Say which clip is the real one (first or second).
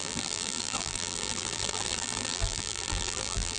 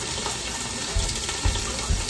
second